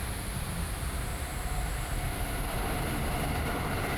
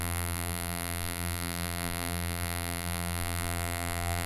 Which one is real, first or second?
first